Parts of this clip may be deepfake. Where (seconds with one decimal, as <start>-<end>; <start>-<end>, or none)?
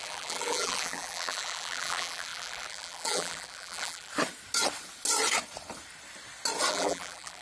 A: 0.0-4.1; 6.7-7.4